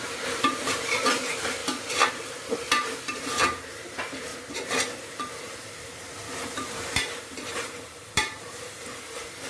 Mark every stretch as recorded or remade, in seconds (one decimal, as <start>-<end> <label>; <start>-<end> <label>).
0.0-1.6 remade; 1.6-2.1 recorded; 2.1-4.3 remade; 4.3-6.5 recorded; 6.5-9.5 remade